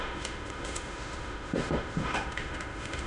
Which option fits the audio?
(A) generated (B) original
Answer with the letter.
A